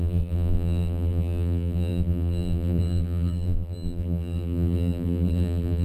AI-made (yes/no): yes